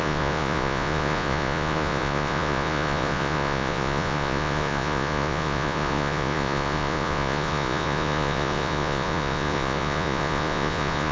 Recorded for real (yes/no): no